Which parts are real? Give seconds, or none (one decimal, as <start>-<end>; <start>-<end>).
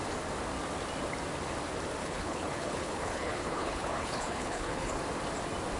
0.0-2.0; 5.0-5.8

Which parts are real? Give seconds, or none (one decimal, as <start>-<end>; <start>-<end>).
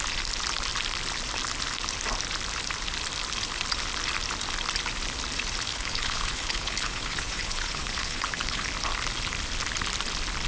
0.0-5.7; 8.7-10.5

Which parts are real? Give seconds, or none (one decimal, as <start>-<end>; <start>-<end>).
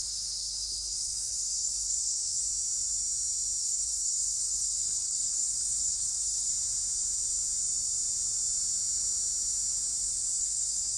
2.5-3.6; 6.5-10.4